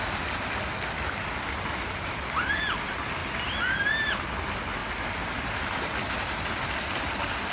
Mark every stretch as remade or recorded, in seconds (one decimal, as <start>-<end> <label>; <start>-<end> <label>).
0.0-7.5 recorded